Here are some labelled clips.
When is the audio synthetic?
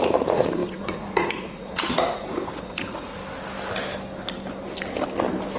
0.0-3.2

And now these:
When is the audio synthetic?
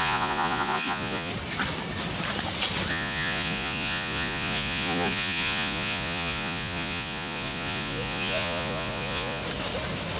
0.0-1.3; 2.9-9.4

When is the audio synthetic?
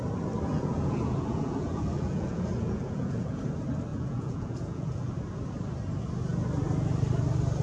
0.5-3.4; 3.9-5.1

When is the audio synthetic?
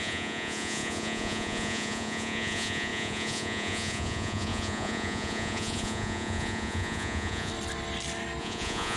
0.0-7.5; 8.4-9.0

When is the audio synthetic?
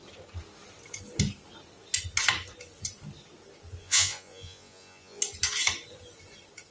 3.8-5.2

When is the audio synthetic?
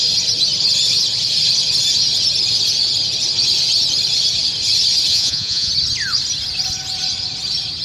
5.1-5.7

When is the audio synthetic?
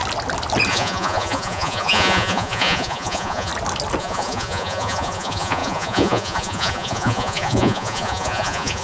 0.7-3.5; 4.0-8.8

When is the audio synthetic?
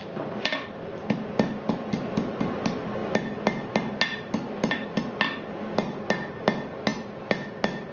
none